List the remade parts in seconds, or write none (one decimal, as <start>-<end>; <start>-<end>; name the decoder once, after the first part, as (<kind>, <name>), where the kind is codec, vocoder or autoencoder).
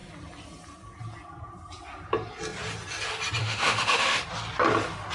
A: 3.4-4.2 (autoencoder, DAC-VAE)